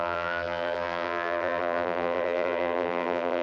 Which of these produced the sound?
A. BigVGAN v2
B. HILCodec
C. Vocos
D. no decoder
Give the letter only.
A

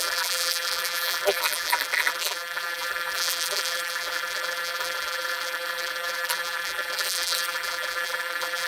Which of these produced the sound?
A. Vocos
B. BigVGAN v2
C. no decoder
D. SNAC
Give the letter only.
B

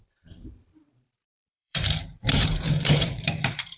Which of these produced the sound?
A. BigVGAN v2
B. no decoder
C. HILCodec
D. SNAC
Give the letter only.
A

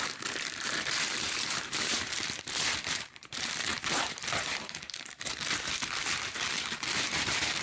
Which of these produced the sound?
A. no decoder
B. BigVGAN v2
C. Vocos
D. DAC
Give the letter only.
B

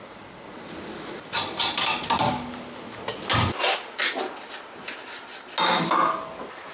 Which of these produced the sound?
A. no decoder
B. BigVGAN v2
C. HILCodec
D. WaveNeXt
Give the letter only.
A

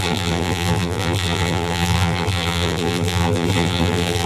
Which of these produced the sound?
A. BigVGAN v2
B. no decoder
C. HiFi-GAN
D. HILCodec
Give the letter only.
A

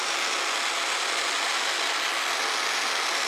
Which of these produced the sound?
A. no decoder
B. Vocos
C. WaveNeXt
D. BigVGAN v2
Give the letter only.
A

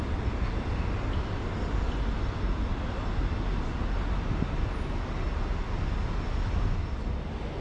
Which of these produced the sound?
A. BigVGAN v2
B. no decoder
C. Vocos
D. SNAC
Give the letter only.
B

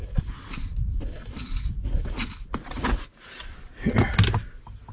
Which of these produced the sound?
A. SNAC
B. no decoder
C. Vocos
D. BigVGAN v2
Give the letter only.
B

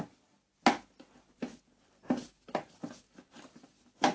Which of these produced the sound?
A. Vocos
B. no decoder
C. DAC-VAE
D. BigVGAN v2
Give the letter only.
B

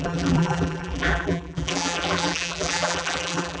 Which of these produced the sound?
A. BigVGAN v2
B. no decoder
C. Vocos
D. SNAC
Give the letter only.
A